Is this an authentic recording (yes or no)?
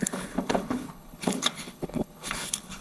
no